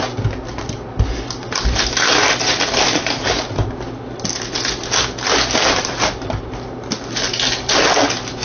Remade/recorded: recorded